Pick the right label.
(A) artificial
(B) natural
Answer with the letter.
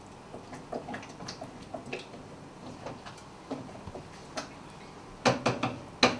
B